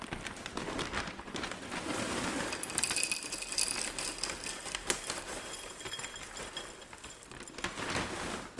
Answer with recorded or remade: recorded